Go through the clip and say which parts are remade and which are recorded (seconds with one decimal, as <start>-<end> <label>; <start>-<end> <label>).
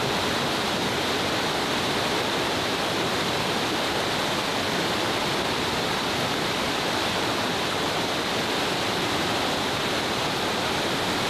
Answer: 0.0-11.3 recorded